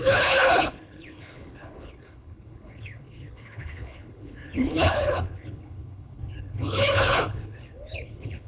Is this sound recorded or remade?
remade